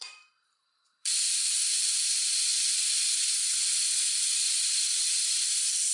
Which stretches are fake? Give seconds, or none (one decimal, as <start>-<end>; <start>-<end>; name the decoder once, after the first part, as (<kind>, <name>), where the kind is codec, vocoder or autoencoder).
0.0-2.0 (vocoder, BigVGAN v2); 4.5-5.1